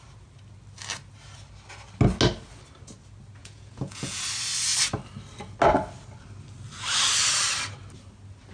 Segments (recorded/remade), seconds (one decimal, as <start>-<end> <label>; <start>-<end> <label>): 0.0-3.4 recorded; 3.4-4.2 remade; 4.2-8.5 recorded